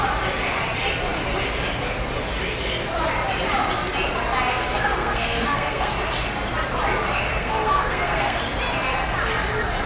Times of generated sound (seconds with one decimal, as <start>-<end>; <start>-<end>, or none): 4.5-5.9; 7.3-8.4